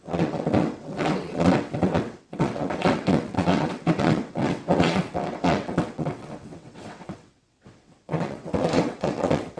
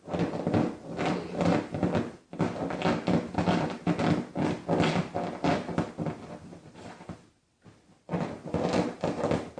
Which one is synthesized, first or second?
first